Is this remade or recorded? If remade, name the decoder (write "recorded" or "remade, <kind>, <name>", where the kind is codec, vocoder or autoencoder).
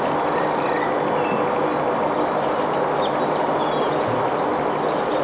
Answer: recorded